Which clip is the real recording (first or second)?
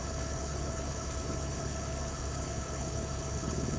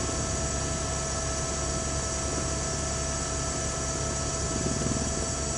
second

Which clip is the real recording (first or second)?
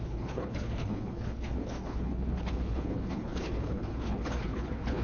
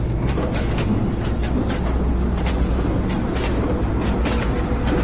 second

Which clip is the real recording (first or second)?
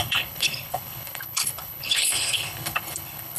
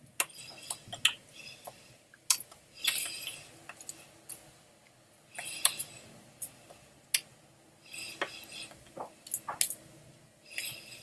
second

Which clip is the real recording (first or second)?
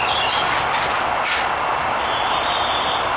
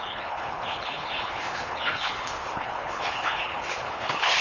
first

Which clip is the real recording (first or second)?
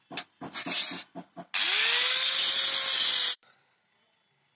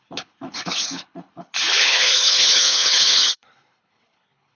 first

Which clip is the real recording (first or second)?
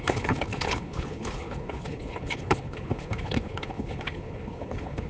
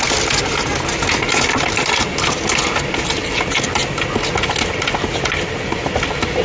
second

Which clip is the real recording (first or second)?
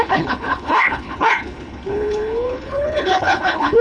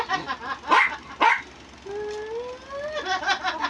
second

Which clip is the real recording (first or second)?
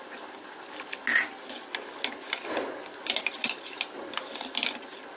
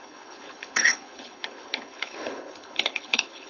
first